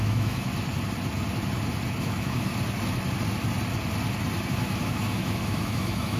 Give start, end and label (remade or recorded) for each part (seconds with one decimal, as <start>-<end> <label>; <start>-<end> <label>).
0.0-0.5 remade; 0.5-2.0 recorded; 2.0-2.5 remade; 2.5-4.5 recorded; 4.5-6.2 remade